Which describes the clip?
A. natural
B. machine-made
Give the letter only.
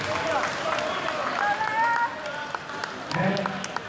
A